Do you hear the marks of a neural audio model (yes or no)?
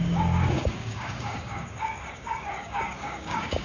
yes